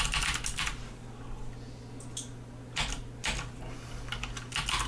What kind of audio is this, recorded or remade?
recorded